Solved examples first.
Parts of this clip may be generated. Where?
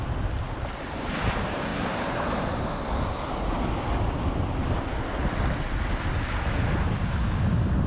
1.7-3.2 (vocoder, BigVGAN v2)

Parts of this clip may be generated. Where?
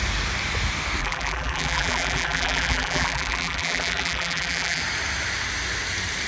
1.0-4.8 (vocoder, BigVGAN v2)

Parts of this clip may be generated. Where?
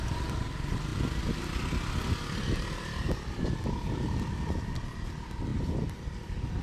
5.5-6.6 (vocoder, BigVGAN v2)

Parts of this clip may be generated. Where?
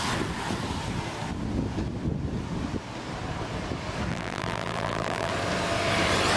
4.1-5.3 (vocoder, BigVGAN v2)